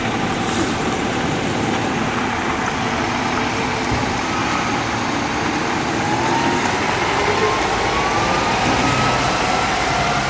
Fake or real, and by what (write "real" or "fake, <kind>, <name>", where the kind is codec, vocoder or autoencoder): fake, vocoder, BigVGAN v2